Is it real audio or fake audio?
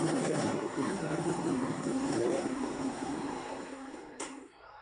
fake